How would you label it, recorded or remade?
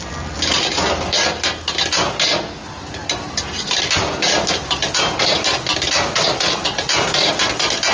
recorded